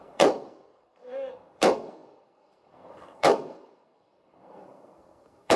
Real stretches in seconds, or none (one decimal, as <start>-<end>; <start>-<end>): none